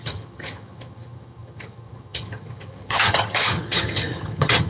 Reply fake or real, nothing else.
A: fake